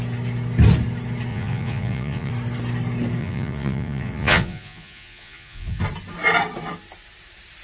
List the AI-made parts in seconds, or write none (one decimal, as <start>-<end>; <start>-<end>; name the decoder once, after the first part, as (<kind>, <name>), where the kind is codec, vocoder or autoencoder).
1.3-2.3 (vocoder, Vocos); 3.2-5.8